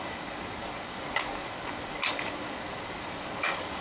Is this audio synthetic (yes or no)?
yes